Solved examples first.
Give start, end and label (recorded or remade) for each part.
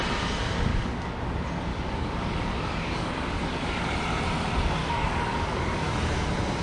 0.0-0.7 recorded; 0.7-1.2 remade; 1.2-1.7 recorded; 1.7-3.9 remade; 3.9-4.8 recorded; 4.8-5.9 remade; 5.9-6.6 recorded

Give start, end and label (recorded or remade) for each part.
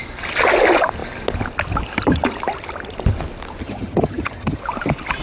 0.0-3.6 recorded; 3.6-4.6 remade; 4.6-5.2 recorded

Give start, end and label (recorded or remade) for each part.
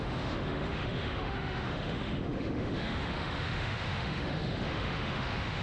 0.0-5.6 remade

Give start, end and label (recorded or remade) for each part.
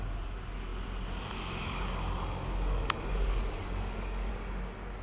0.0-1.6 recorded; 1.6-4.3 remade; 4.3-5.0 recorded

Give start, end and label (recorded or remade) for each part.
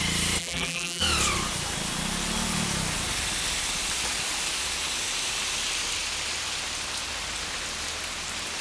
0.0-0.4 recorded; 0.4-1.0 remade; 1.0-8.6 recorded